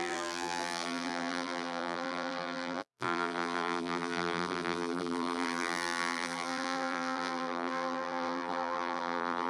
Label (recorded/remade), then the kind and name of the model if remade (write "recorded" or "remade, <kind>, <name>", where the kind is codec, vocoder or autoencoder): remade, vocoder, BigVGAN v2